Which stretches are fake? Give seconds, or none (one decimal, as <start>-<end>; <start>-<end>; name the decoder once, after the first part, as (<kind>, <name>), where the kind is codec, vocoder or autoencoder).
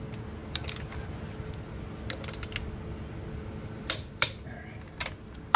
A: none